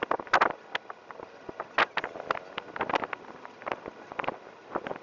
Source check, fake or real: real